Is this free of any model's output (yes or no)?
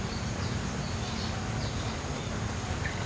yes